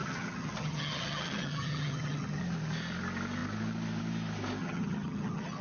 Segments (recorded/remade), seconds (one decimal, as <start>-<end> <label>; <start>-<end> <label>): 0.0-2.4 remade; 2.4-4.6 recorded; 4.6-5.6 remade